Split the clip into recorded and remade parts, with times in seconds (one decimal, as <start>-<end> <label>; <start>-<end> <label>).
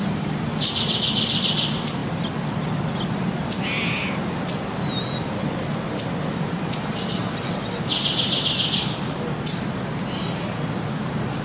0.0-11.4 recorded